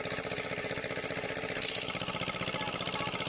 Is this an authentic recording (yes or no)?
yes